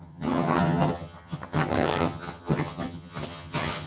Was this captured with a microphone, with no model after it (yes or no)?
no